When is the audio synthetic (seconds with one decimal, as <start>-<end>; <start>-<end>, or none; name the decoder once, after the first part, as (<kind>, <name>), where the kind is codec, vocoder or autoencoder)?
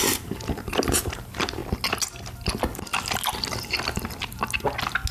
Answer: 0.0-1.6 (vocoder, BigVGAN v2)